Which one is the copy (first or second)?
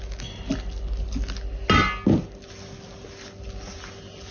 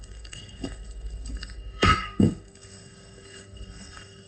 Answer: second